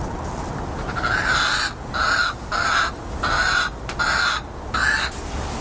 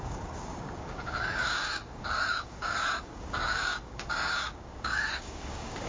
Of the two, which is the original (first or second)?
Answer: first